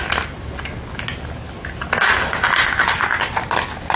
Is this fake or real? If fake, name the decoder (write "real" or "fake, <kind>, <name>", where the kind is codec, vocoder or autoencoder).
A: real